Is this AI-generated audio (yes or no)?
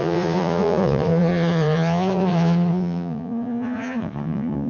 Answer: yes